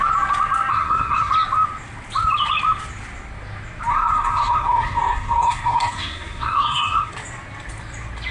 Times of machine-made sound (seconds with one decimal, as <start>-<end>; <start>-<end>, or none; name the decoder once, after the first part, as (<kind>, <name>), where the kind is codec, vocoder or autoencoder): 0.7-1.3 (codec, SNAC); 3.9-7.1